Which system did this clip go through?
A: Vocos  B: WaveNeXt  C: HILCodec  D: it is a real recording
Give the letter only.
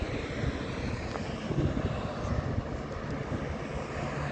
D